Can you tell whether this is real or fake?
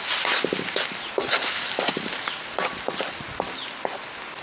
real